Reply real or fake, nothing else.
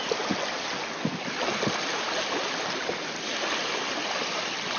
real